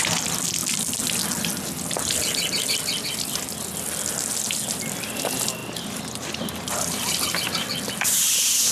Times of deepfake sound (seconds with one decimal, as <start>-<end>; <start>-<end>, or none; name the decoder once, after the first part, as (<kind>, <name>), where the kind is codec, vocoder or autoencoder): none